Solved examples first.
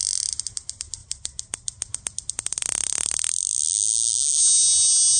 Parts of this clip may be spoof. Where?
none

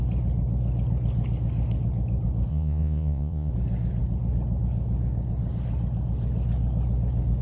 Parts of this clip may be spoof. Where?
2.5-3.5 (vocoder, Vocos)

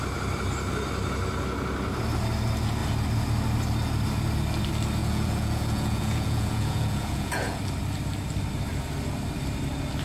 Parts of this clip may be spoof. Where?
5.0-7.6 (vocoder, Vocos)

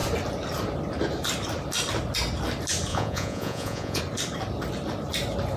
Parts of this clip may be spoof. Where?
2.9-4.0 (vocoder, Vocos)

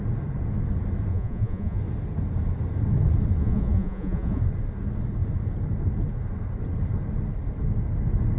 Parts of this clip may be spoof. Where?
1.1-1.8 (vocoder, Vocos); 3.4-4.4

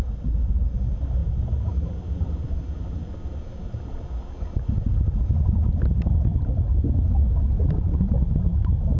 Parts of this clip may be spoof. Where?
none

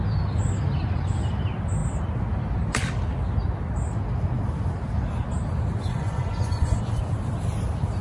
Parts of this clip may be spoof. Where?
5.9-6.8 (vocoder, Vocos)

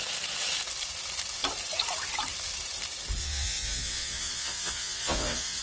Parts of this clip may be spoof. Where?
3.2-5.6 (vocoder, Vocos)